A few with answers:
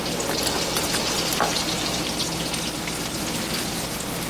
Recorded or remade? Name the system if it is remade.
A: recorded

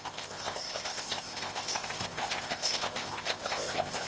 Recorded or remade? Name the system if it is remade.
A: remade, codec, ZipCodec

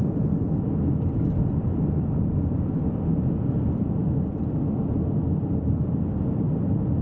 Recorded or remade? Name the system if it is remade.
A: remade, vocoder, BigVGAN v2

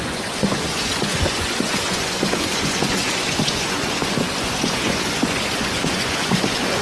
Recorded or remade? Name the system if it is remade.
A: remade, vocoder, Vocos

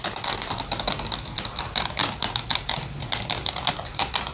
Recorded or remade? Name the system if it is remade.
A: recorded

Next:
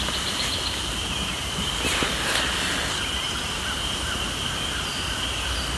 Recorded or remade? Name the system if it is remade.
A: recorded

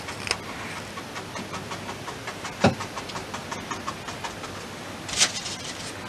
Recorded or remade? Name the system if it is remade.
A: recorded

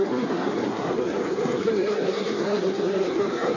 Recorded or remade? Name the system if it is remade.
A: remade, codec, SNAC